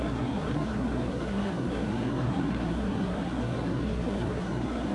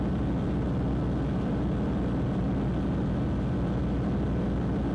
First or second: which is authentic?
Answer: second